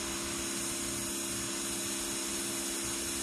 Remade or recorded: recorded